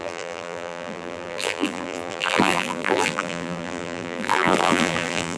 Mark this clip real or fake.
fake